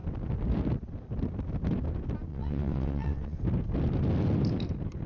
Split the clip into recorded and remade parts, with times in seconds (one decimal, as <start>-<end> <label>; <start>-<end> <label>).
0.0-2.3 recorded; 2.3-3.4 remade; 3.4-5.1 recorded

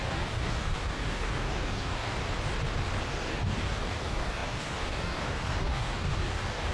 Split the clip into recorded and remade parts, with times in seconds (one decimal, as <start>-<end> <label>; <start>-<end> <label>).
0.0-2.2 remade; 2.2-3.1 recorded; 3.1-6.7 remade

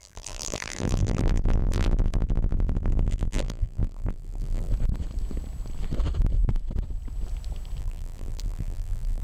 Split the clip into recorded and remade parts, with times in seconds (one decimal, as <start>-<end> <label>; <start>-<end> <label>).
0.0-4.7 remade; 4.7-7.8 recorded; 7.8-9.2 remade

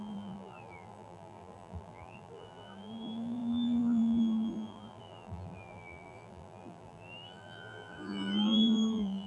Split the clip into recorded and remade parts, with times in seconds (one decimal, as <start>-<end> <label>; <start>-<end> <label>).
0.0-9.3 remade

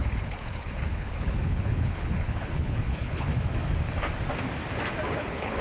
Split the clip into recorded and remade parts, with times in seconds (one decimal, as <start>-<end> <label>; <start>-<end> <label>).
0.0-3.3 remade; 3.3-5.1 recorded; 5.1-5.6 remade

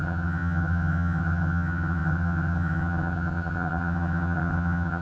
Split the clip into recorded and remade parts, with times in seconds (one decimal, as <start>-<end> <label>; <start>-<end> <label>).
0.0-5.0 remade

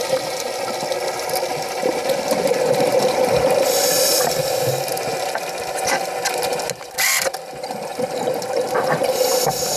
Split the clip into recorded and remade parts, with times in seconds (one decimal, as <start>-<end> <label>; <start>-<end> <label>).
0.0-9.8 recorded

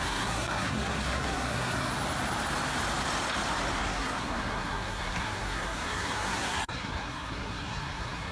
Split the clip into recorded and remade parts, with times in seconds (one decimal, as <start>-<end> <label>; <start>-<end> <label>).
0.0-1.9 remade; 1.9-3.8 recorded; 3.8-8.3 remade